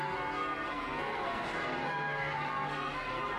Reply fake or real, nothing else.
fake